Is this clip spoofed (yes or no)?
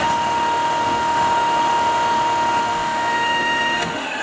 yes